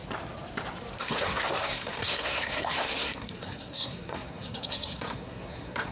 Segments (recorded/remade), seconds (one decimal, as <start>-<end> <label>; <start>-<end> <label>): 0.0-1.0 recorded; 1.0-5.9 remade